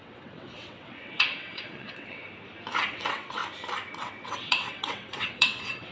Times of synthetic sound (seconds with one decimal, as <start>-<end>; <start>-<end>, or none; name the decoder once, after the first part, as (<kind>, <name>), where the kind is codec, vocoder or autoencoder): 0.0-2.2 (vocoder, WaveNeXt); 2.9-3.4; 4.0-5.9

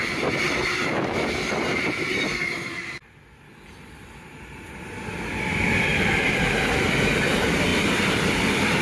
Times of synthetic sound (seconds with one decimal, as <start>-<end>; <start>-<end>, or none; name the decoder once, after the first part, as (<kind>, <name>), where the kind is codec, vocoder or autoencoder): none

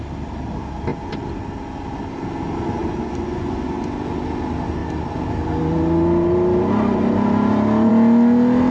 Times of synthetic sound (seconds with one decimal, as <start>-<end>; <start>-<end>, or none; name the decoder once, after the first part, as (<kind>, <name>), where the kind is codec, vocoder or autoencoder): 2.8-3.8 (vocoder, Vocos)

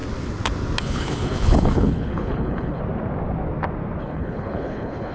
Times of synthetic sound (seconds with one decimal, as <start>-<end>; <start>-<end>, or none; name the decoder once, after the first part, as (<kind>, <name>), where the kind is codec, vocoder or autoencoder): 0.8-2.8 (codec, HILCodec); 4.0-5.1

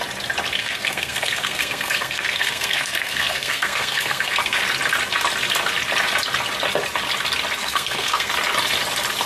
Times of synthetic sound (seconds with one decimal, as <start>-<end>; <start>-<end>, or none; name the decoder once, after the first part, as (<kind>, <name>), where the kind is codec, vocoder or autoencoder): 0.6-4.6 (codec, SNAC); 7.6-8.3

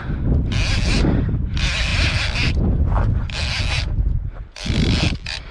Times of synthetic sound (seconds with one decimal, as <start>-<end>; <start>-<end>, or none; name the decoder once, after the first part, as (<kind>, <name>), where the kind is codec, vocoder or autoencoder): none

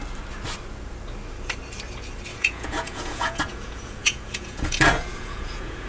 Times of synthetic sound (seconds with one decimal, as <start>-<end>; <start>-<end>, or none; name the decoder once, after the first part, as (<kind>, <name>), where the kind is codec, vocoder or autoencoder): 2.3-5.9 (vocoder, Vocos)

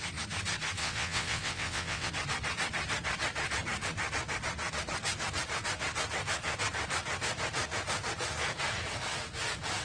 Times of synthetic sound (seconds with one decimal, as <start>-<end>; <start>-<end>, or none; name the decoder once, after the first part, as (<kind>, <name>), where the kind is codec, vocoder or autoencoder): 0.8-2.1 (vocoder, WaveNeXt)